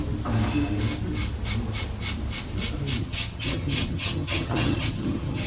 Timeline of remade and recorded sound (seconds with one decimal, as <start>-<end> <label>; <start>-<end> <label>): 0.0-3.0 recorded; 3.0-5.5 remade